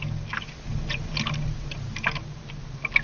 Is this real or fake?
real